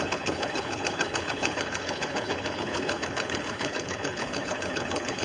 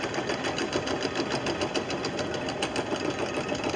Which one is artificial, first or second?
first